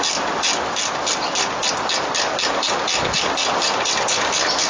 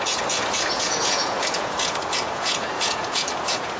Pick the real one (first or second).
first